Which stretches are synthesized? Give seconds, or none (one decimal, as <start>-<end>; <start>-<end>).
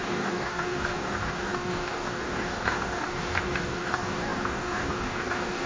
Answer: 0.0-5.7